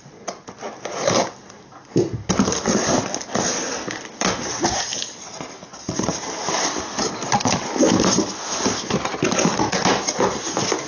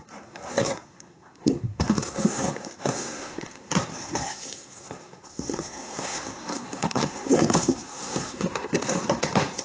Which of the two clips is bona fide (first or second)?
first